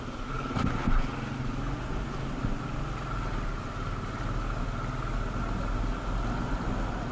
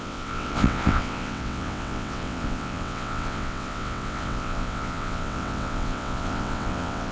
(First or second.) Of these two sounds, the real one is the first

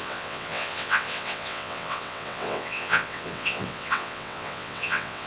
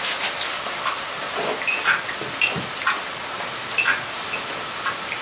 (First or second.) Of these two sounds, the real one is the second